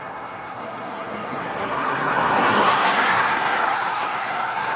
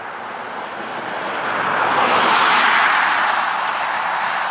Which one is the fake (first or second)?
first